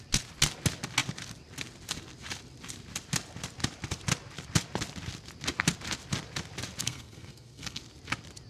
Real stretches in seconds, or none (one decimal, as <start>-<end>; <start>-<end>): 0.0-6.8; 7.8-8.5